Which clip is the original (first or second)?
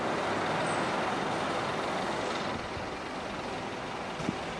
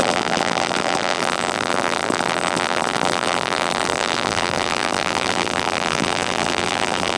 first